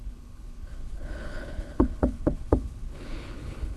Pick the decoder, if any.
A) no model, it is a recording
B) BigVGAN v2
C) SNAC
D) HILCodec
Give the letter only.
D